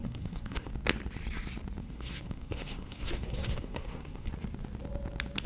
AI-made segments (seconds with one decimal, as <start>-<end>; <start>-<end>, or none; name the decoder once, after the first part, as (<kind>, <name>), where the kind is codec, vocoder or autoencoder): 0.0-0.7 (codec, SNAC); 1.8-4.3